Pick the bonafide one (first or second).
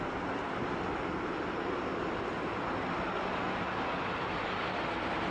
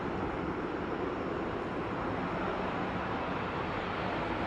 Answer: first